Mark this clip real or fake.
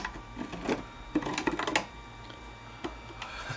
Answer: real